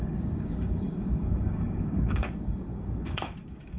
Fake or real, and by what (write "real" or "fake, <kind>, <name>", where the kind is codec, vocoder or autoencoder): fake, codec, DAC